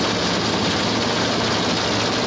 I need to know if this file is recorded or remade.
recorded